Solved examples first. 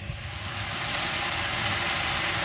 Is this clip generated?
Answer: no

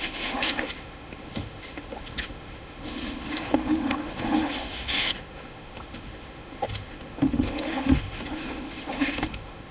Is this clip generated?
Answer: yes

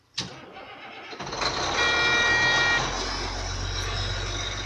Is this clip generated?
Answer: no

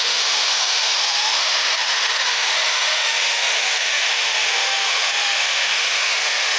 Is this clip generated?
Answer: yes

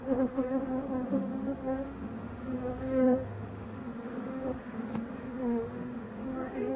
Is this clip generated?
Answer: yes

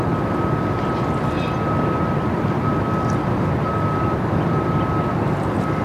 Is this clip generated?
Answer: no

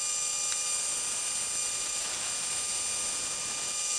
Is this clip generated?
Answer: no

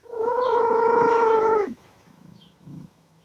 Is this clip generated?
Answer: yes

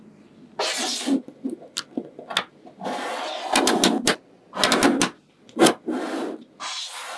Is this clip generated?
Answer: no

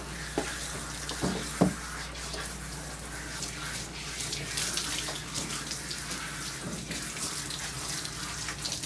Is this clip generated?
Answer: no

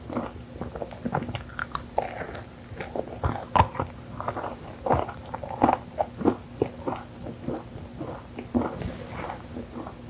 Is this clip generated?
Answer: no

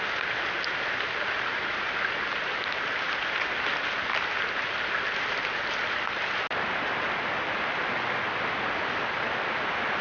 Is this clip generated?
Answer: no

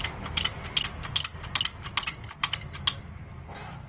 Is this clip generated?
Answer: no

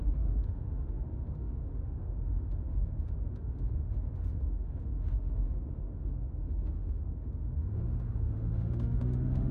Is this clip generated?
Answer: yes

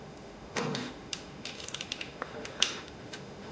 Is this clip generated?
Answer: yes